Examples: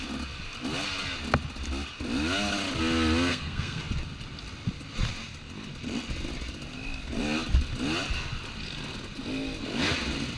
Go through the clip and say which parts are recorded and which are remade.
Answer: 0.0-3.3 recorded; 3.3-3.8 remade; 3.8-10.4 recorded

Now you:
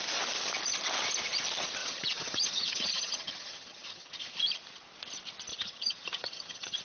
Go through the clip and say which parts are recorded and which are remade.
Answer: 0.0-1.8 recorded; 1.8-4.2 remade; 4.2-5.5 recorded; 5.5-6.8 remade

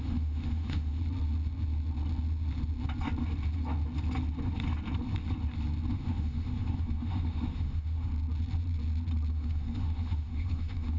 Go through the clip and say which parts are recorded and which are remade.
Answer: 0.0-1.0 remade; 1.0-5.9 recorded; 5.9-8.1 remade; 8.1-9.3 recorded; 9.3-11.0 remade

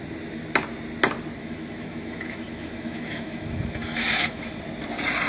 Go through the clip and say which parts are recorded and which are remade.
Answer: 0.0-1.4 recorded; 1.4-4.6 remade; 4.6-5.3 recorded

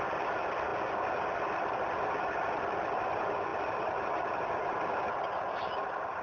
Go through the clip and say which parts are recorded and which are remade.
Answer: 0.0-6.2 recorded

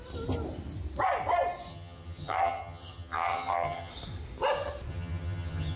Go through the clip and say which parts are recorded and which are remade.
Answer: 0.0-1.7 recorded; 1.7-3.9 remade; 3.9-4.9 recorded; 4.9-5.8 remade

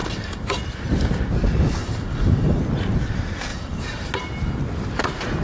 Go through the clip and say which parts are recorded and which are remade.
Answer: 0.0-0.6 remade; 0.6-1.8 recorded; 1.8-2.6 remade; 2.6-3.5 recorded; 3.5-4.1 remade; 4.1-5.4 recorded

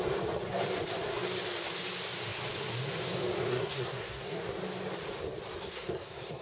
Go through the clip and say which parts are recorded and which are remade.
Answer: 0.0-3.5 recorded; 3.5-4.4 remade; 4.4-5.6 recorded; 5.6-6.4 remade